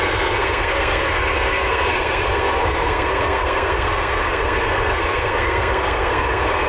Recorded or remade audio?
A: remade